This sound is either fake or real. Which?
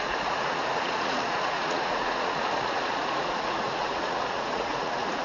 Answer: fake